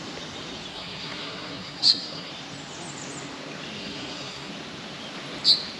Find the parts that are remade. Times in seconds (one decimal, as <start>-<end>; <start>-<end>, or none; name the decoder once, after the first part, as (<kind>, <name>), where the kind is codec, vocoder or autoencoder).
0.7-2.3 (codec, SNAC); 3.8-4.5

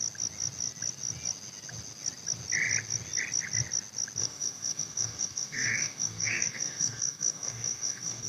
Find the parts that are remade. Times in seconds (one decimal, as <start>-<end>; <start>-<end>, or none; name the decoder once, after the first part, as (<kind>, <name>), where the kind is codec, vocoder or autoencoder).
4.2-8.3 (codec, DAC)